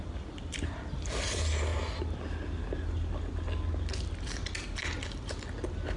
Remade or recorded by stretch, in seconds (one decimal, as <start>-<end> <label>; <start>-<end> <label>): 0.0-1.7 remade; 1.7-5.3 recorded; 5.3-6.0 remade